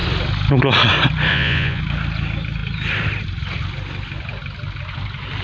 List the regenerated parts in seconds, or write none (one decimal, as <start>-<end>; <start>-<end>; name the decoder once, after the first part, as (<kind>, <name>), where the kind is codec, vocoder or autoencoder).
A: 1.3-1.8 (vocoder, Vocos)

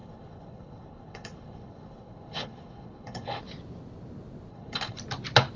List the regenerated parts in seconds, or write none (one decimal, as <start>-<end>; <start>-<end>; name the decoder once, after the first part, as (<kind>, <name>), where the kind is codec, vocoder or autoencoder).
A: 0.0-3.4 (codec, HILCodec); 4.5-5.0

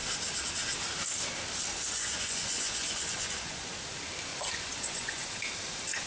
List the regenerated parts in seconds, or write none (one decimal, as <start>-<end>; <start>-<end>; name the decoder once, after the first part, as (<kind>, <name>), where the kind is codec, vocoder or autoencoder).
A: 1.7-3.7 (vocoder, Vocos); 4.3-5.3

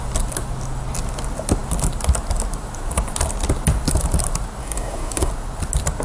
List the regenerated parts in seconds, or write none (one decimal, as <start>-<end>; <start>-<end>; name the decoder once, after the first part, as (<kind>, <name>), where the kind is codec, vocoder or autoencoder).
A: 4.6-5.3 (codec, DAC)

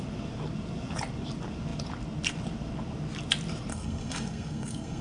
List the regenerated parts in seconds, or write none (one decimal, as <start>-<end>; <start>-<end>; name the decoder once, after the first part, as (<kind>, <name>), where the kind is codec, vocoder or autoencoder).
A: 3.7-5.0 (codec, SNAC)

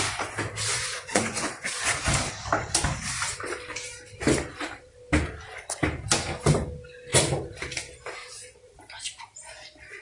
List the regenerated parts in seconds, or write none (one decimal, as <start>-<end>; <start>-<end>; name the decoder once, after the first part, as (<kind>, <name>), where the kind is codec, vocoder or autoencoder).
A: 0.7-1.7 (vocoder, Vocos)